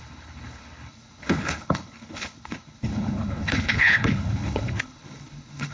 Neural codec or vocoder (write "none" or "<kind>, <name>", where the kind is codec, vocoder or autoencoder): codec, HILCodec